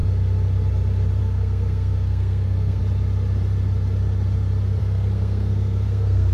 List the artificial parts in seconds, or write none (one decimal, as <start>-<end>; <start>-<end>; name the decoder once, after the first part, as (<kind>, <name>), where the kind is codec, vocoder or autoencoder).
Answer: 1.2-2.8 (codec, SNAC); 4.8-6.3

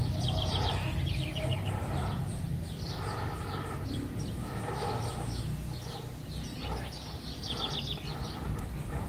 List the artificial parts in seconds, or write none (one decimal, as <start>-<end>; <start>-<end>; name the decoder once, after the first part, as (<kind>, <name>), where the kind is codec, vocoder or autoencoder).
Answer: 4.4-5.4 (autoencoder, DAC-VAE)

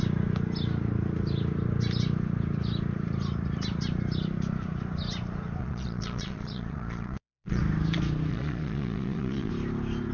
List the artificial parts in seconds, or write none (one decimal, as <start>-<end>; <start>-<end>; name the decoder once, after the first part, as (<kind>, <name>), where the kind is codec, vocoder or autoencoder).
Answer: 5.6-7.6 (vocoder, Vocos); 8.3-9.5

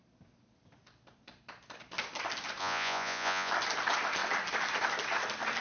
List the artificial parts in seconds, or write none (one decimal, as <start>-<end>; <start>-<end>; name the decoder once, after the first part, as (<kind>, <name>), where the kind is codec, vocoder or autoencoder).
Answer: 2.6-3.5 (vocoder, Vocos)

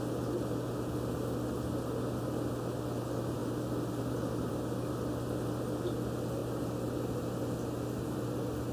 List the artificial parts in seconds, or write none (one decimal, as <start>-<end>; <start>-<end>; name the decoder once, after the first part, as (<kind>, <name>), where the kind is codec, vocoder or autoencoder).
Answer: none

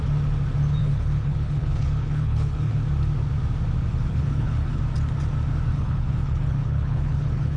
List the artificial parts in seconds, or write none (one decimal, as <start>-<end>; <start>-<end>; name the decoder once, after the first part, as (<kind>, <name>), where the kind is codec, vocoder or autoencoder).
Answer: 0.8-2.7 (codec, HILCodec); 4.1-4.8; 5.7-7.6

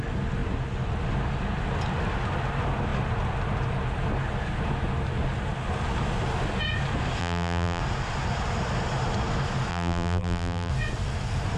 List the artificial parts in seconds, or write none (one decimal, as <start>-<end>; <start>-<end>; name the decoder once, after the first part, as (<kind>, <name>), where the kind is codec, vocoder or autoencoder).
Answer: 7.2-7.8 (vocoder, BigVGAN v2); 9.7-10.7

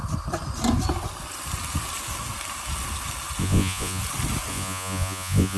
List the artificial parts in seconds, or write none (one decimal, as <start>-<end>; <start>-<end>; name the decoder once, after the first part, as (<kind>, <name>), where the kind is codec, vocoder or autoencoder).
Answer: 3.4-4.0 (vocoder, Vocos); 4.5-5.6